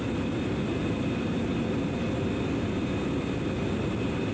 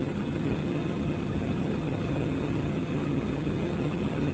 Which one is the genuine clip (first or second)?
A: first